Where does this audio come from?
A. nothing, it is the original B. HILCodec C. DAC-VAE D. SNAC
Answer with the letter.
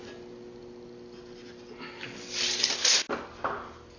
A